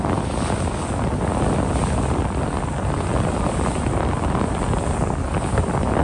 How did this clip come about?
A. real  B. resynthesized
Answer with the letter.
A